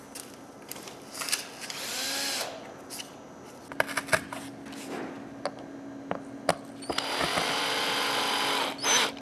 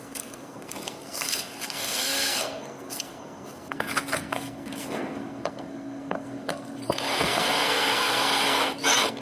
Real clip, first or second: first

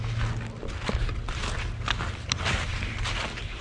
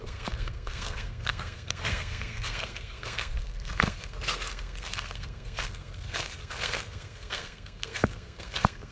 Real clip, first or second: first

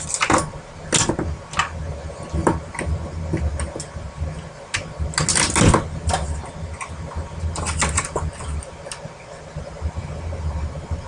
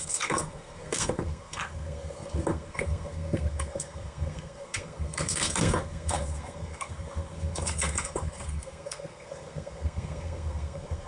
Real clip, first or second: first